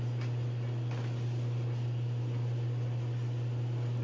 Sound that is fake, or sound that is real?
real